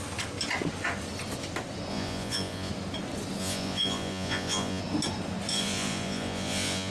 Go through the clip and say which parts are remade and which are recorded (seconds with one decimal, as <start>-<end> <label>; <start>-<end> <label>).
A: 0.0-1.9 recorded; 1.9-2.7 remade; 2.7-3.4 recorded; 3.4-4.8 remade; 4.8-5.5 recorded; 5.5-6.9 remade